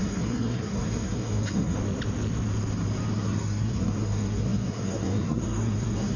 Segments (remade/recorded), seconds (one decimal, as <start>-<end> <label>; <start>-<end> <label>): 0.0-1.8 remade; 1.8-3.1 recorded; 3.1-6.2 remade

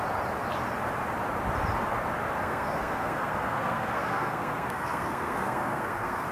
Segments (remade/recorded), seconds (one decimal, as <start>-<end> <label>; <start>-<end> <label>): 0.0-2.4 recorded; 2.4-6.3 remade

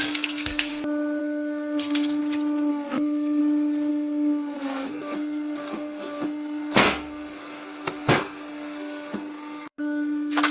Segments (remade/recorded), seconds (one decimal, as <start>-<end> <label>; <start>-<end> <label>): 0.0-0.7 remade; 0.7-1.2 recorded; 1.2-2.2 remade; 2.2-2.7 recorded; 2.7-3.4 remade; 3.4-3.9 recorded; 3.9-10.5 remade

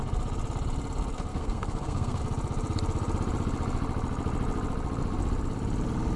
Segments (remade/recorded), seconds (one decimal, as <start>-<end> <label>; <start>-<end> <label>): 0.0-1.3 recorded; 1.3-2.2 remade; 2.2-6.2 recorded

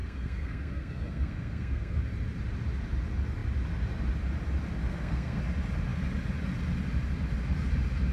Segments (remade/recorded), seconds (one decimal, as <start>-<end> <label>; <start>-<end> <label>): 0.0-2.0 remade; 2.0-4.8 recorded; 4.8-5.4 remade; 5.4-8.1 recorded

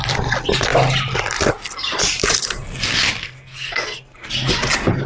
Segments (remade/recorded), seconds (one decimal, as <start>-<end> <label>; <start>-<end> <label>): 0.0-3.2 recorded; 3.2-4.3 remade; 4.3-5.1 recorded

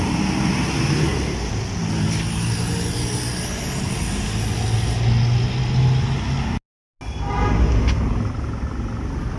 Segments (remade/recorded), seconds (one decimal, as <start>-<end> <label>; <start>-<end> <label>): 0.0-9.4 recorded